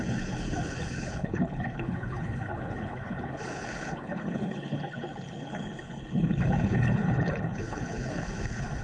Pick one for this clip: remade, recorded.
remade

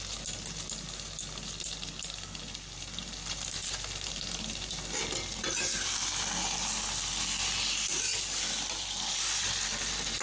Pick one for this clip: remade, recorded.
recorded